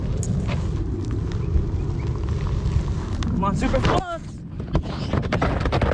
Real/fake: real